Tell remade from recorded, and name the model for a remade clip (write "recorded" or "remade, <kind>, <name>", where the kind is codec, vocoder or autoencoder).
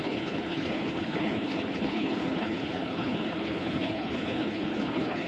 remade, codec, HILCodec